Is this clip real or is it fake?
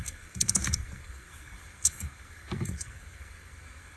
fake